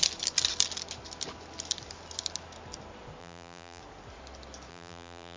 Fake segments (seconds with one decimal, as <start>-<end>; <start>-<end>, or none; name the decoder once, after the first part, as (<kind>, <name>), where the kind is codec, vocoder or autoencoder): 3.2-3.8 (vocoder, BigVGAN v2); 4.7-5.4